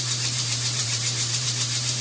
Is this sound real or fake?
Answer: fake